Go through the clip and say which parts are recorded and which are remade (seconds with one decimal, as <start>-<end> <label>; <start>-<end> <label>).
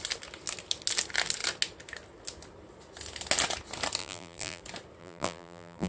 0.0-4.0 recorded; 4.0-4.6 remade; 4.6-5.0 recorded; 5.0-5.9 remade